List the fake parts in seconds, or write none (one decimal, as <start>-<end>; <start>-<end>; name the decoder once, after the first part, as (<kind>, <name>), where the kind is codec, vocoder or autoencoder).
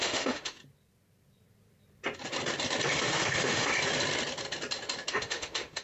0.0-0.6 (autoencoder, DAC-VAE); 2.9-3.7; 5.1-5.8